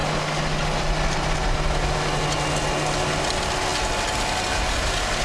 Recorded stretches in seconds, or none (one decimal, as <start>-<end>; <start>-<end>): 0.0-5.2